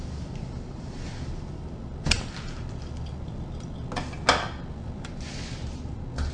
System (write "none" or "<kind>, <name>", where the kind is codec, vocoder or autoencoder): none